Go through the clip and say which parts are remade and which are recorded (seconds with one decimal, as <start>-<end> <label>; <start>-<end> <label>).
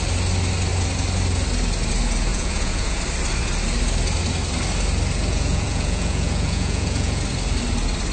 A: 0.0-2.3 recorded; 2.3-3.0 remade; 3.0-5.3 recorded; 5.3-7.2 remade; 7.2-8.1 recorded